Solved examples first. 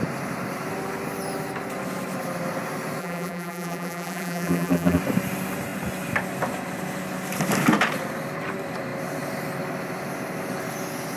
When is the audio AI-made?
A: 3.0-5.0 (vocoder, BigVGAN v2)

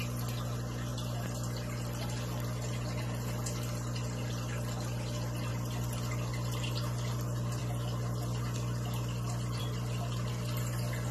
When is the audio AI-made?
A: none

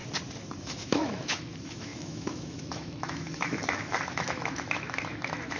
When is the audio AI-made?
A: 0.6-5.6 (autoencoder, DAC-VAE)